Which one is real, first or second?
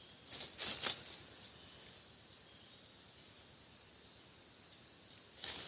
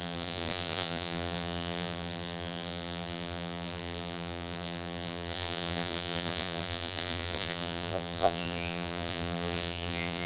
first